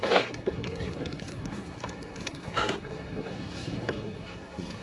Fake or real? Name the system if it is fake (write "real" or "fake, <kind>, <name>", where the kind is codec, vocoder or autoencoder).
fake, codec, SNAC